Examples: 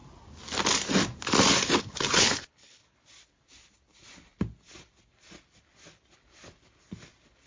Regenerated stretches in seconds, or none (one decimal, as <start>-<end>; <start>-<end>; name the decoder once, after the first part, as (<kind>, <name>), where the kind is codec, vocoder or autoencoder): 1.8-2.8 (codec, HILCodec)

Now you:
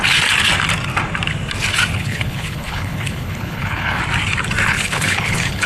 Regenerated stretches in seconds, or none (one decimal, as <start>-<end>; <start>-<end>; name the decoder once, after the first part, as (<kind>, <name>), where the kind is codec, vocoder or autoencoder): 1.9-4.0 (codec, HILCodec); 4.7-5.7

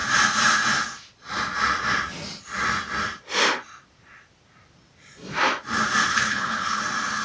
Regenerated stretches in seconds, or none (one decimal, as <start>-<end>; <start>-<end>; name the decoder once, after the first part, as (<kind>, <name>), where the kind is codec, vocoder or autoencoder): 6.1-6.8 (codec, HILCodec)